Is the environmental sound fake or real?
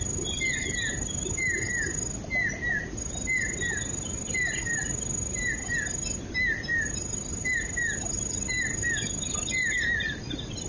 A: real